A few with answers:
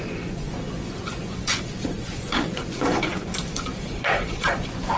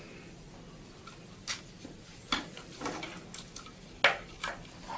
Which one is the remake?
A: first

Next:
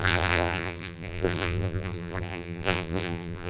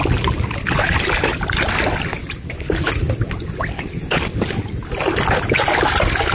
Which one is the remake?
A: first